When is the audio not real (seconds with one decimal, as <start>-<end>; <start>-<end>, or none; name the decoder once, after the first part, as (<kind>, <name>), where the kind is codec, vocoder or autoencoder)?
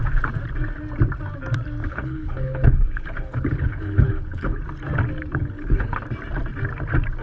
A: 1.8-4.6 (codec, HILCodec); 5.4-6.0